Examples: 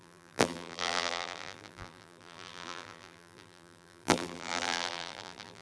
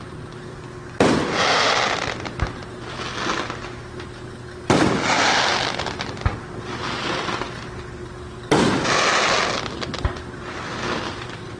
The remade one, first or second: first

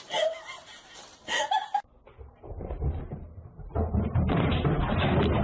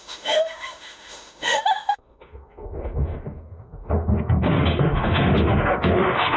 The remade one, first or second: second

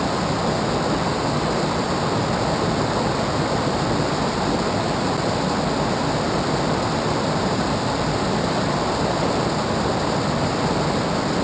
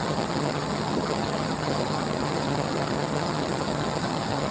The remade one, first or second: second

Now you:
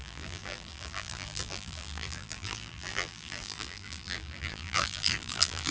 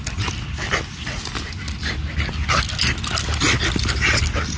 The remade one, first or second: first